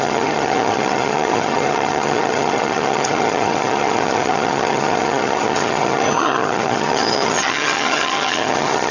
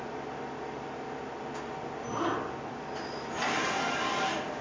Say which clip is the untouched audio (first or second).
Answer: second